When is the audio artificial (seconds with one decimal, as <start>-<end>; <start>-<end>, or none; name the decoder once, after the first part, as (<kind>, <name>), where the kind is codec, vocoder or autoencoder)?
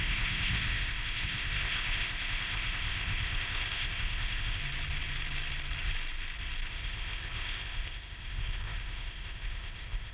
0.0-4.6 (codec, ZipCodec); 6.7-10.1